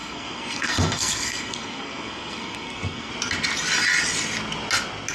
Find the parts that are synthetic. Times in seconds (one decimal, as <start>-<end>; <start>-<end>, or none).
0.0-3.1